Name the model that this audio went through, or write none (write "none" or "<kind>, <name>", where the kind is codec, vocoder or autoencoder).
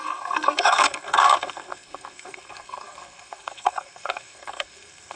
codec, SNAC